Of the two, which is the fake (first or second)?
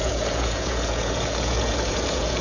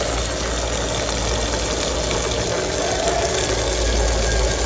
first